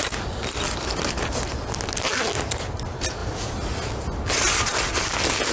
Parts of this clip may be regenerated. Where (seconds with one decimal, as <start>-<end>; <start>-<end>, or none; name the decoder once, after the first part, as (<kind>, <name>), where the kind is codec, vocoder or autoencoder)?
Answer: none